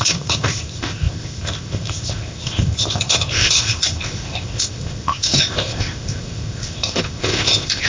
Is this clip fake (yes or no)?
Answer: yes